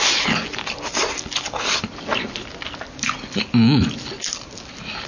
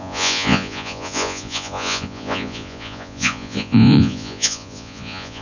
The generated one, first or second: second